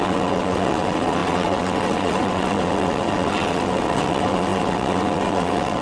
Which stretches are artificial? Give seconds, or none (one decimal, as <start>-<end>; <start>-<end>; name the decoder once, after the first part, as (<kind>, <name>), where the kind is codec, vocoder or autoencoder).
0.0-5.8 (vocoder, WaveNeXt)